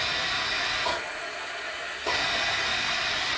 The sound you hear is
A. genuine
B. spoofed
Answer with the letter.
A